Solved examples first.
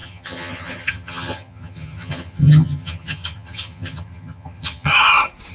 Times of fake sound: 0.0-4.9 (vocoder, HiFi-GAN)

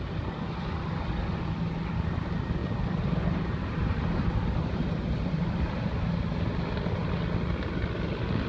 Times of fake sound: 2.6-5.6 (vocoder, BigVGAN v2)

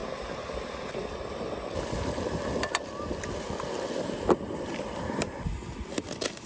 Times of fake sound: none

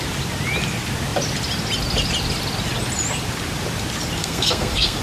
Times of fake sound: 4.2-5.0 (codec, SNAC)

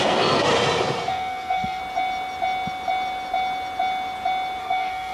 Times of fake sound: 0.0-0.5 (codec, SNAC); 1.1-1.8; 4.6-5.1